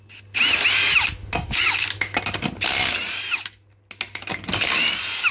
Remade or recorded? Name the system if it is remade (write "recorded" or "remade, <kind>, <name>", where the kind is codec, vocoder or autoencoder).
recorded